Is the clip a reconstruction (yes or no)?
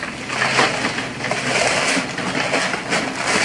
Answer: no